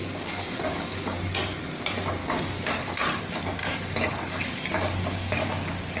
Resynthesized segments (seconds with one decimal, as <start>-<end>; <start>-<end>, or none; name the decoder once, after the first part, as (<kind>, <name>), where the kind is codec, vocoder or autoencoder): 0.0-1.2 (codec, DAC); 2.2-3.2; 3.6-6.0